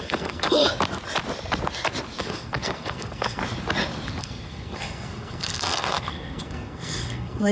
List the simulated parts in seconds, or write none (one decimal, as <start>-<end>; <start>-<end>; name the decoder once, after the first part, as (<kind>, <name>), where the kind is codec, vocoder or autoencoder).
0.0-0.6 (codec, SNAC); 2.2-3.4; 4.2-7.5